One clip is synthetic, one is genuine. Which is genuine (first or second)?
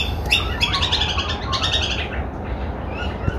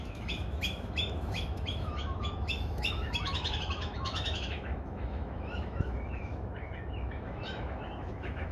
first